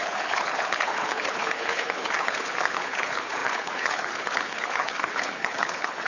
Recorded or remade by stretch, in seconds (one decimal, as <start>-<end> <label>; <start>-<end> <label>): 0.0-6.1 remade

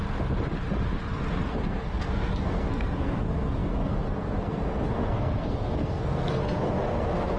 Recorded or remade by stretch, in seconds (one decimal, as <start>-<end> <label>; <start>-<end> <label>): 0.0-1.5 recorded; 1.5-7.4 remade